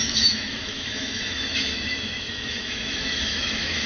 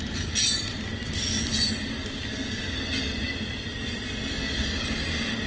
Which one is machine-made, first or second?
first